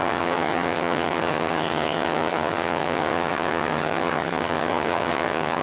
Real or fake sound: fake